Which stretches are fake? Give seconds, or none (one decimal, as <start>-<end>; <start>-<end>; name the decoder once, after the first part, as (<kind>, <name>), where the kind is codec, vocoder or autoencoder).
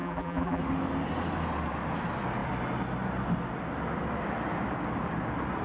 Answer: 0.0-0.6 (vocoder, BigVGAN v2)